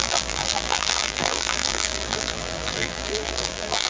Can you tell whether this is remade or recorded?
remade